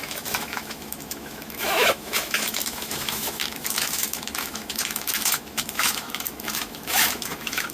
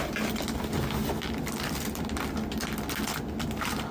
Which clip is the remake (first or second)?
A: first